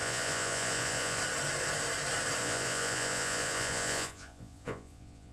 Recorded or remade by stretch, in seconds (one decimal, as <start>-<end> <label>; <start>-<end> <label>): 0.0-1.2 remade; 1.2-2.4 recorded; 2.4-5.3 remade